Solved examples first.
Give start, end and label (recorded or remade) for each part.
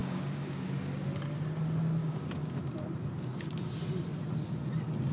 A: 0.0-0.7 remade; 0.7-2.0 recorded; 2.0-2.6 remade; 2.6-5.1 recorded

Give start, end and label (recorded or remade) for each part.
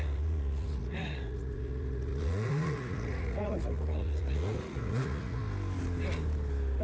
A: 0.0-5.4 remade; 5.4-6.8 recorded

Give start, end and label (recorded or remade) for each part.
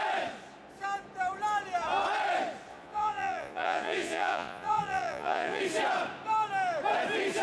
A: 0.0-2.7 recorded; 2.7-5.6 remade; 5.6-7.4 recorded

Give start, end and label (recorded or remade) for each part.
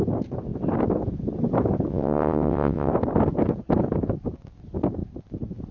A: 0.0-1.9 recorded; 1.9-2.9 remade; 2.9-5.7 recorded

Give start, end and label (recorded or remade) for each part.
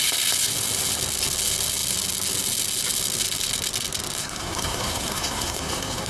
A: 0.0-4.2 recorded; 4.2-6.1 remade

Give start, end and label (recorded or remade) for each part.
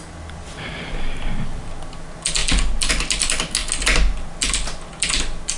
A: 0.0-5.6 recorded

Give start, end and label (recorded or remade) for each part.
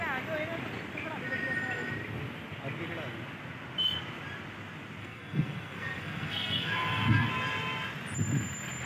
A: 0.0-5.0 recorded; 5.0-7.3 remade; 7.3-8.9 recorded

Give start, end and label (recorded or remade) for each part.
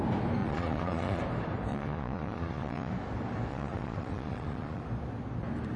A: 0.0-0.4 recorded; 0.4-1.2 remade; 1.2-1.7 recorded; 1.7-2.9 remade; 2.9-3.5 recorded; 3.5-4.8 remade; 4.8-5.8 recorded